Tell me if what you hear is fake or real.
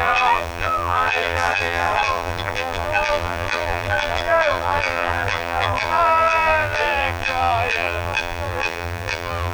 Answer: fake